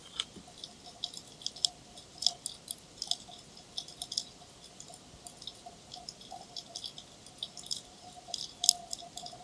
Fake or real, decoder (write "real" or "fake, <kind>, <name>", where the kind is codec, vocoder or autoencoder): real